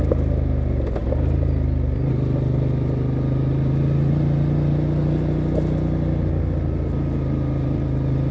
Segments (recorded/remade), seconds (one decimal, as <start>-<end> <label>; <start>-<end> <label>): 0.0-8.3 recorded